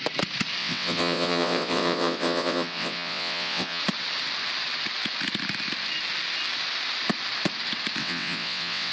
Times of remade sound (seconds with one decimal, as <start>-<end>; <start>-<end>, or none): 0.6-3.8; 8.0-8.9